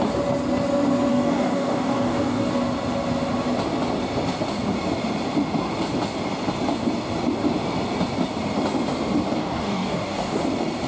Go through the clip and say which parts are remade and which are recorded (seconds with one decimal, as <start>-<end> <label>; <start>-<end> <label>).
0.0-1.1 recorded; 1.1-2.5 remade; 2.5-9.4 recorded; 9.4-10.4 remade; 10.4-10.9 recorded